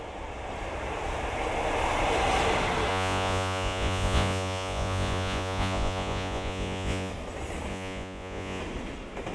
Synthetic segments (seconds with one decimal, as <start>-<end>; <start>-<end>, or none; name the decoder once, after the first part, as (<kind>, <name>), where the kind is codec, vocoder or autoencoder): 2.9-7.1 (vocoder, Vocos); 7.7-8.6